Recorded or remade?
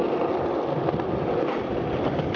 recorded